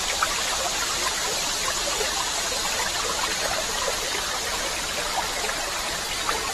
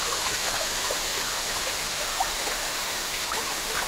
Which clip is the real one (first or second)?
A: first